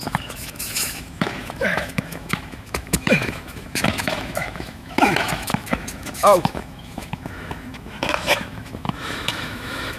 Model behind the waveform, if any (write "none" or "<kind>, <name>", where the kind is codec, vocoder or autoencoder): autoencoder, DAC-VAE